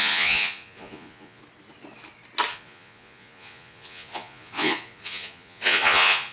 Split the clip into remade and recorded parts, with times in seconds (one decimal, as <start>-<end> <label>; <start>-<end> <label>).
0.0-1.4 remade; 1.4-2.5 recorded; 2.5-6.3 remade